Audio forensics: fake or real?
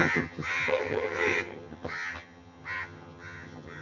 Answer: fake